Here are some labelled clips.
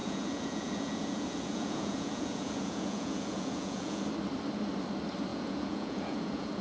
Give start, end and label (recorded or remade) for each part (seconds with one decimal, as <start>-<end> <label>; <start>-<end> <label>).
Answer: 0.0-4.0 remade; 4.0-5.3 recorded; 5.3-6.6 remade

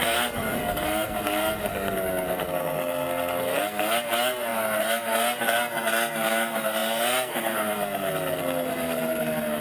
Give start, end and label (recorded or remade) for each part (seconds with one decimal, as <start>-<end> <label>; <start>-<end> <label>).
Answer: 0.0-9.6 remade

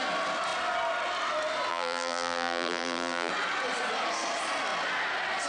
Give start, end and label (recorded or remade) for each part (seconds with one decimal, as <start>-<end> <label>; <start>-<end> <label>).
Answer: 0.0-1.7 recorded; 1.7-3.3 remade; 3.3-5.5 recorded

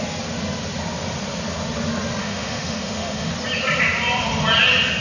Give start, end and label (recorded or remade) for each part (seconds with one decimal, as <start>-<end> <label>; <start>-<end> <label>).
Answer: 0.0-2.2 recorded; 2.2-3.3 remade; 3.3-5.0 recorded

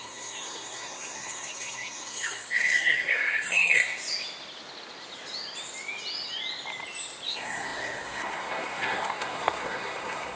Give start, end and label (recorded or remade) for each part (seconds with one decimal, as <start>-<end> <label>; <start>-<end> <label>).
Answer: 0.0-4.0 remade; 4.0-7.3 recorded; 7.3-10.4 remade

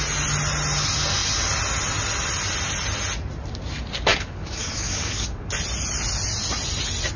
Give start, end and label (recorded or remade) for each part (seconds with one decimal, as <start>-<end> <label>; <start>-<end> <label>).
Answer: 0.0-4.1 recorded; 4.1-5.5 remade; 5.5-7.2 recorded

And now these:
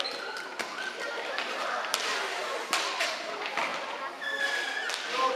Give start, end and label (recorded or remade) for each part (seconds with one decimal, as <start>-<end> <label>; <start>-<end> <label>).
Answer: 0.0-0.5 recorded; 0.5-2.0 remade; 2.0-5.4 recorded